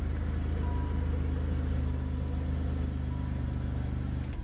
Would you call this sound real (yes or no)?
yes